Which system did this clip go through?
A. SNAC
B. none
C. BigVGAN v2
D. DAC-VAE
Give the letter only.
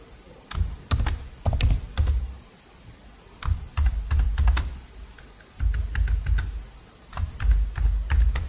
B